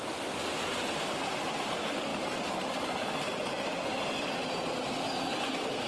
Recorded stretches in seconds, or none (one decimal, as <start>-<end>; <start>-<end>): 0.0-5.9